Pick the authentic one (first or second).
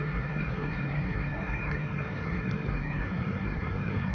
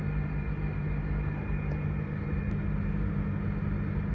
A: second